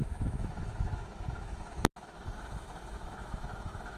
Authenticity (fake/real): fake